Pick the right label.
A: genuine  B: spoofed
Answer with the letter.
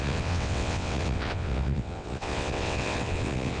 B